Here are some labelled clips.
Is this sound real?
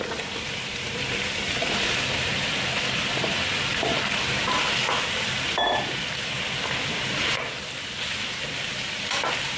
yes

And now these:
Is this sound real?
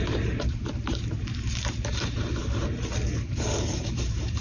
no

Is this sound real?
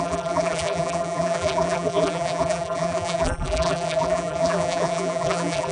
no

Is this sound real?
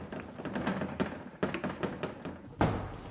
yes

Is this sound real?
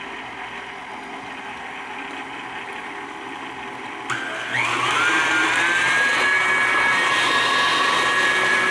yes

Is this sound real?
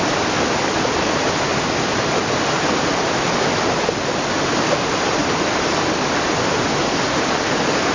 yes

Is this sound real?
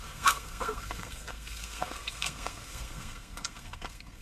no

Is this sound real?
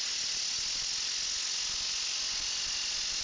yes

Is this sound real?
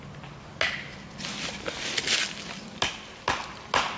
yes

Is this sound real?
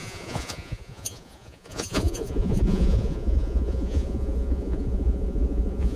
no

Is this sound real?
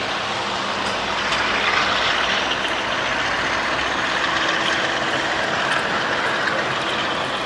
yes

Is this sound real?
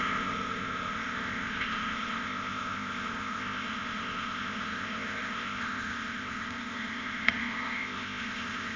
no